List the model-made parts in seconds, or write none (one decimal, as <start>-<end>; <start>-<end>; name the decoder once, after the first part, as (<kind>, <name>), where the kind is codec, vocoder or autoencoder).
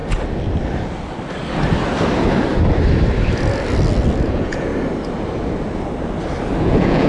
4.3-4.7 (vocoder, Vocos); 6.6-7.1